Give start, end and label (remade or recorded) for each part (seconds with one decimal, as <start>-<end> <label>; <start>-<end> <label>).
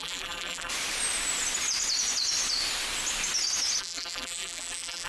0.0-0.7 remade; 0.7-3.8 recorded; 3.8-5.1 remade